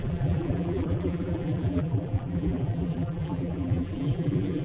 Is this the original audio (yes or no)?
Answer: no